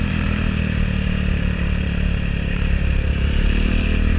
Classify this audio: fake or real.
fake